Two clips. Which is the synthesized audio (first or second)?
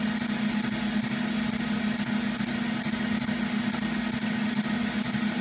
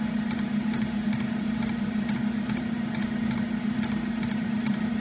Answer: second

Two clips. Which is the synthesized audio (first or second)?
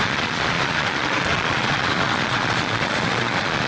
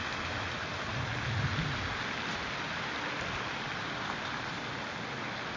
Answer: first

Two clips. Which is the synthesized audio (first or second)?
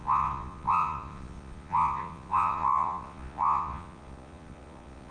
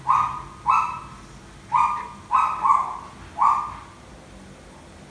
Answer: first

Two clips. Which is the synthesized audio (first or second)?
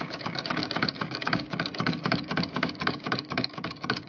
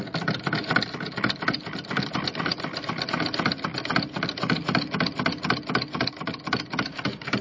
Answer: first